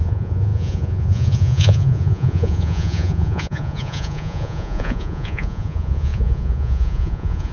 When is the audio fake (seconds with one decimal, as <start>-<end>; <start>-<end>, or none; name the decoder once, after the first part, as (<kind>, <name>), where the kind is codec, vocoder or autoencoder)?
0.0-7.5 (vocoder, Vocos)